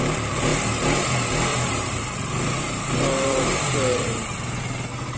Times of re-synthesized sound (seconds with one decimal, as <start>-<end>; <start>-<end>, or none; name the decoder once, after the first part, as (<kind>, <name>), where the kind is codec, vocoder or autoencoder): 0.5-1.1 (vocoder, BigVGAN v2); 1.5-4.6